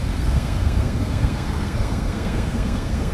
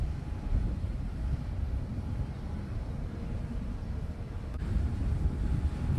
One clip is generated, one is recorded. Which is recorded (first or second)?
second